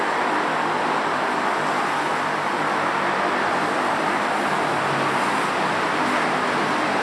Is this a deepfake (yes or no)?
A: no